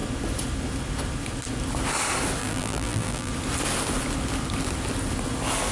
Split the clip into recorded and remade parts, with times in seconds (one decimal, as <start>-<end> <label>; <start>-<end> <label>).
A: 0.0-2.4 recorded; 2.4-3.3 remade; 3.3-5.7 recorded